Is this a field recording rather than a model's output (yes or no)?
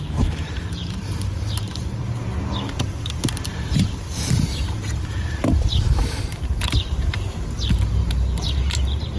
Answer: no